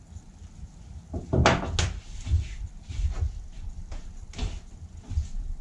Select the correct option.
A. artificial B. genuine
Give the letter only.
B